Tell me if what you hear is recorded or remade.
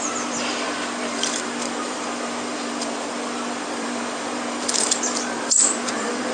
remade